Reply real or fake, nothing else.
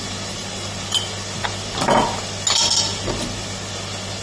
real